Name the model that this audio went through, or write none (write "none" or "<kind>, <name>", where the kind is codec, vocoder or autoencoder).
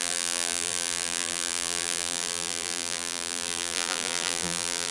vocoder, BigVGAN v2